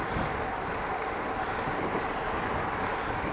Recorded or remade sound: recorded